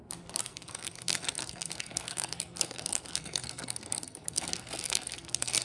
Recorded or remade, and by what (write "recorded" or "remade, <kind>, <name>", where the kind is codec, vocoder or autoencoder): remade, codec, SNAC